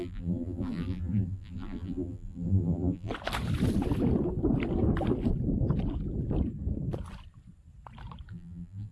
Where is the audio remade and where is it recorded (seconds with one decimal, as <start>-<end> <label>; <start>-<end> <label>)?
0.0-3.1 remade; 3.1-8.3 recorded; 8.3-8.9 remade

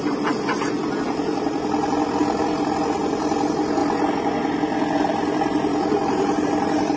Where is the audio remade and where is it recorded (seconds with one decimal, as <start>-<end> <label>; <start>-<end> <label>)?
0.0-7.0 recorded

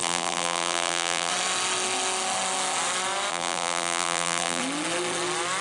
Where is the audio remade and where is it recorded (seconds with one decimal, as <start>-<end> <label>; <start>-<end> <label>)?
0.0-1.3 remade; 1.3-3.3 recorded; 3.3-4.6 remade; 4.6-5.6 recorded

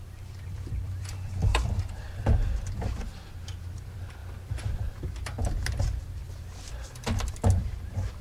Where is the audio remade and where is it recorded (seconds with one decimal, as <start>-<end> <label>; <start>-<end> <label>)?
0.0-6.2 remade; 6.2-7.3 recorded; 7.3-8.2 remade

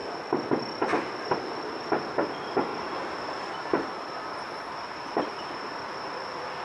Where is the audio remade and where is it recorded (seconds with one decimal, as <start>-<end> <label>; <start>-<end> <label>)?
0.0-2.7 recorded; 2.7-3.3 remade; 3.3-3.7 recorded; 3.7-5.3 remade; 5.3-6.6 recorded

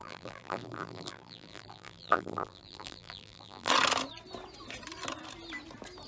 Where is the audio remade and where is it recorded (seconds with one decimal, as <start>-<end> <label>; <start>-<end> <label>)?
0.0-3.7 remade; 3.7-6.1 recorded

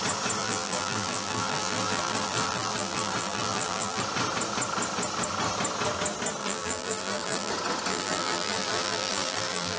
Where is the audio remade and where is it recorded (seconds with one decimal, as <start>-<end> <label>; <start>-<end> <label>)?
0.0-0.4 recorded; 0.4-4.0 remade; 4.0-6.4 recorded; 6.4-7.5 remade; 7.5-7.9 recorded; 7.9-9.8 remade

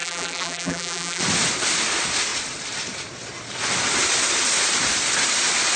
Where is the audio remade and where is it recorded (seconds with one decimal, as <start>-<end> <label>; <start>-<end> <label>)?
0.0-1.2 remade; 1.2-5.8 recorded